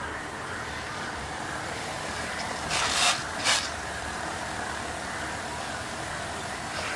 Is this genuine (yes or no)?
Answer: no